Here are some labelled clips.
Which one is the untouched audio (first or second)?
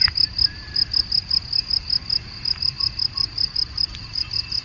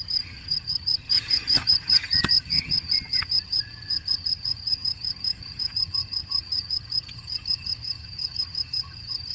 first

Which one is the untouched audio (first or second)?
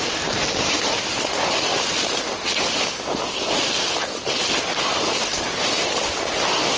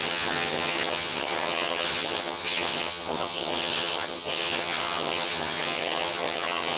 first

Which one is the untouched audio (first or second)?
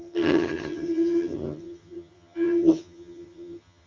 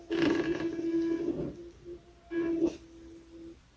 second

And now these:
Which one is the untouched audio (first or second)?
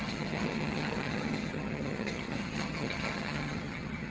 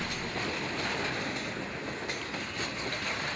second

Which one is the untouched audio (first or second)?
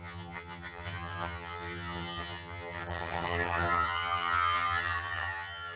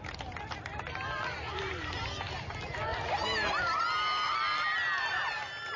second